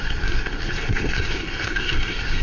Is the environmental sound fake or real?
fake